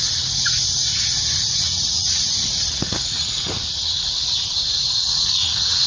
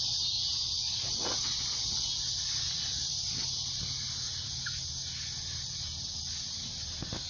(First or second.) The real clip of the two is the second